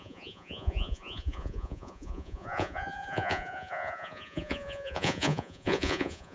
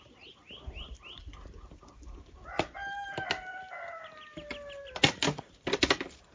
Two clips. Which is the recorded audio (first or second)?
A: second